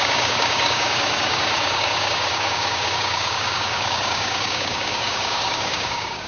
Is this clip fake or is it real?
fake